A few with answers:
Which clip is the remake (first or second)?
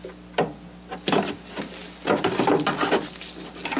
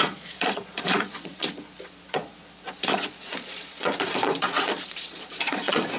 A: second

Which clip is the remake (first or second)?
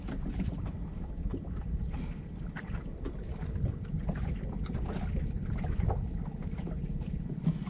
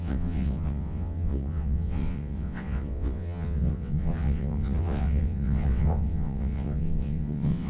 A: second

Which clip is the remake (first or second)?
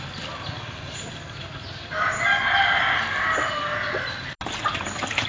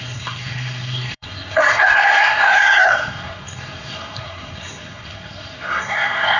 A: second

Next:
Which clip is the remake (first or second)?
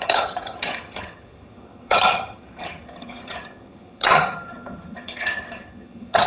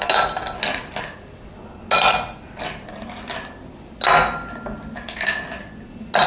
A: first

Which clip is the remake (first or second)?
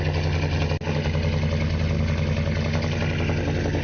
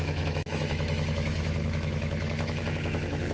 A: second